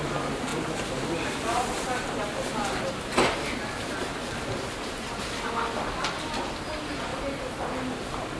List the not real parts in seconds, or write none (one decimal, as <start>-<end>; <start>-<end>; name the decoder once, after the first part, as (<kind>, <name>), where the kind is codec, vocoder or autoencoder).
none